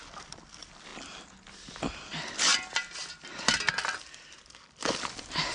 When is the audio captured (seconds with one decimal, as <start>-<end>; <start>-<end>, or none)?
0.0-5.5